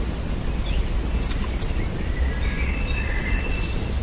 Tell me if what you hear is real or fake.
real